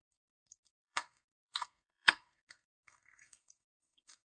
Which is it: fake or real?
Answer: fake